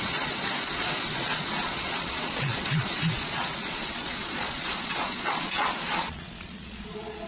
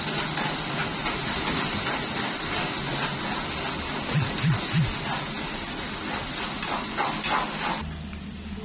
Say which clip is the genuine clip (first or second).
second